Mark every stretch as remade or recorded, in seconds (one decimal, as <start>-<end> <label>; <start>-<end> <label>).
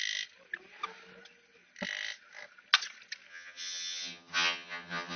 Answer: 0.0-3.3 recorded; 3.3-5.2 remade